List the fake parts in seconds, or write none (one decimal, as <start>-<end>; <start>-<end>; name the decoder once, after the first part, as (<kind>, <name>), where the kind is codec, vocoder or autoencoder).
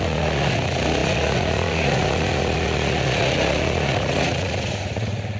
0.0-5.4 (vocoder, Vocos)